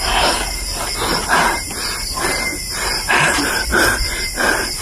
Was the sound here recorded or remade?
remade